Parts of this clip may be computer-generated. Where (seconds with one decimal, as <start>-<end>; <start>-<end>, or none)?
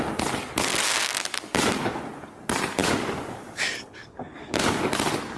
0.7-2.0; 2.8-4.9